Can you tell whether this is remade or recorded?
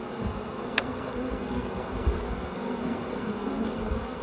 remade